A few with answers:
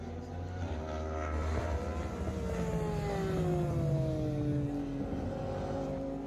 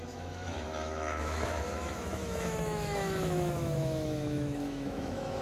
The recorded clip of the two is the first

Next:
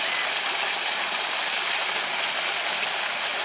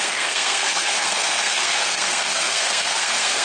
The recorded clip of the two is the first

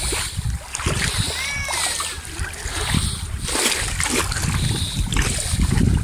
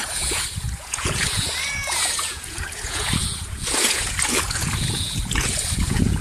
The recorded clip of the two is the first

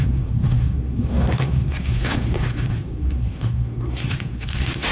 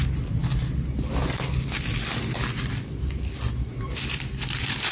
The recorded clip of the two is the second